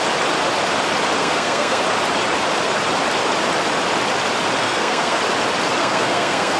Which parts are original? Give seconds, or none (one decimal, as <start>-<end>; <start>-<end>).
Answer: 0.0-1.2; 1.8-4.6; 5.2-5.8